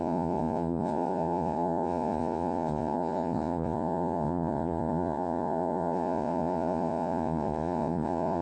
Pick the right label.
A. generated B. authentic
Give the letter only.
A